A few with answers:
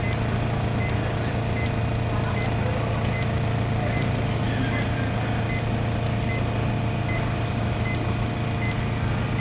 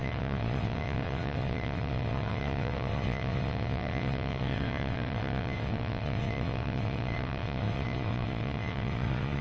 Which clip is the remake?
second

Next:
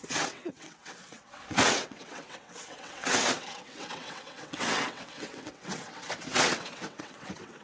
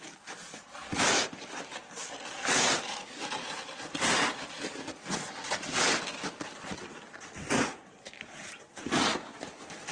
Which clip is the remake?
first